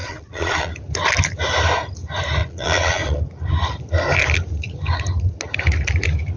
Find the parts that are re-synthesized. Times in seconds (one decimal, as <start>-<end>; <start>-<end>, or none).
0.0-0.7; 2.4-3.2